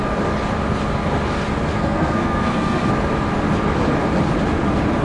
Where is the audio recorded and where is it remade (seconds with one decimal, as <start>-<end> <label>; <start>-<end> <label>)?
0.0-1.7 recorded; 1.7-2.9 remade; 2.9-5.0 recorded